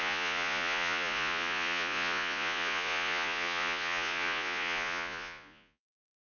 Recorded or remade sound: remade